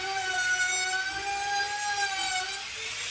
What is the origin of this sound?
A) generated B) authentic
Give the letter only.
B